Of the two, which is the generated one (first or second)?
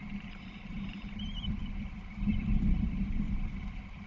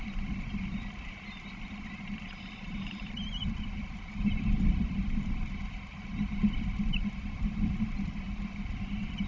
second